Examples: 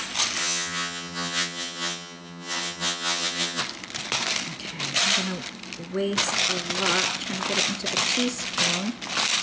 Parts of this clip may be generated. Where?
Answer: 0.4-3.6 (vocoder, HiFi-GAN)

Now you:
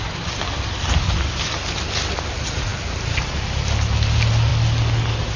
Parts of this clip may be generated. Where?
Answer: none

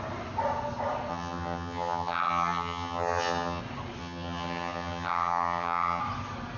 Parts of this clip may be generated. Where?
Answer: 1.1-3.6 (vocoder, HiFi-GAN); 4.0-6.0

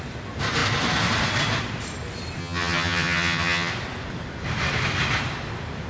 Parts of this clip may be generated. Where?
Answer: 2.4-3.7 (vocoder, HiFi-GAN)

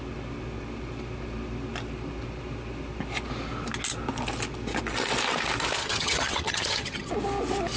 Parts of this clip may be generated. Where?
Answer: 5.8-7.1 (vocoder, HiFi-GAN)

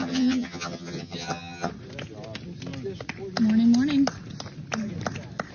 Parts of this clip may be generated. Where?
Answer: 0.0-1.7 (vocoder, HiFi-GAN)

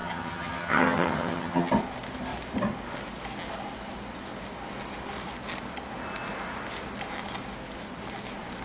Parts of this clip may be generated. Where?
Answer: 0.0-1.7 (vocoder, HiFi-GAN)